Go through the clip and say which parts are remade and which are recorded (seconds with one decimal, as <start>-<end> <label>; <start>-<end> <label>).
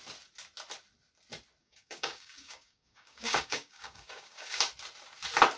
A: 0.0-1.6 recorded; 1.6-4.6 remade; 4.6-5.6 recorded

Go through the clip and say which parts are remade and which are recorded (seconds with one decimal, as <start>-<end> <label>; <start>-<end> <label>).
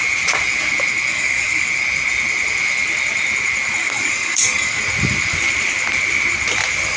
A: 0.0-1.1 recorded; 1.1-1.7 remade; 1.7-3.8 recorded; 3.8-4.8 remade; 4.8-7.0 recorded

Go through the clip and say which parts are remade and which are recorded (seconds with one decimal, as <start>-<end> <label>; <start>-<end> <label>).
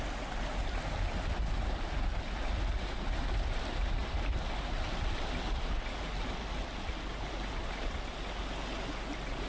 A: 0.0-9.5 recorded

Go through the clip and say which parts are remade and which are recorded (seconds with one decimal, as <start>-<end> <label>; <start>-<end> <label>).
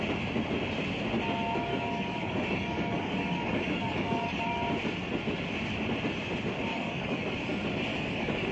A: 0.0-1.7 recorded; 1.7-4.4 remade; 4.4-6.7 recorded; 6.7-7.4 remade; 7.4-7.9 recorded; 7.9-8.5 remade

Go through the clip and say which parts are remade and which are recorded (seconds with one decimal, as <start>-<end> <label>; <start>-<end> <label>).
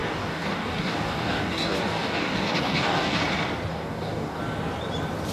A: 0.0-3.2 remade; 3.2-3.7 recorded; 3.7-4.4 remade; 4.4-5.3 recorded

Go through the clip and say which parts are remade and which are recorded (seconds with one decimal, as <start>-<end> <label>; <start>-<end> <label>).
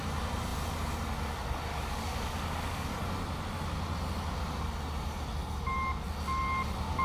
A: 0.0-1.7 recorded; 1.7-2.9 remade; 2.9-7.0 recorded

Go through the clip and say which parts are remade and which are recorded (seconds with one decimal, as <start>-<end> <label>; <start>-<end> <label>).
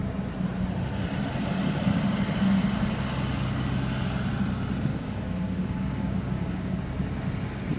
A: 0.0-4.9 recorded; 4.9-6.8 remade; 6.8-7.8 recorded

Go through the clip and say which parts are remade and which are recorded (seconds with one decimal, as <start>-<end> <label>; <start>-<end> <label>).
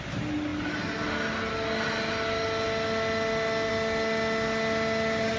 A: 0.0-5.4 recorded